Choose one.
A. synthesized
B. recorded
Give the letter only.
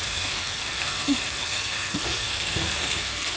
A